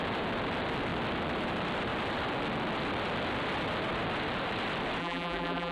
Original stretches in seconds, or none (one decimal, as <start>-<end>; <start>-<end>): 0.0-5.0